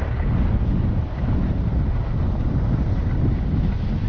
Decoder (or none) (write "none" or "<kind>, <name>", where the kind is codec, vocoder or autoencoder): none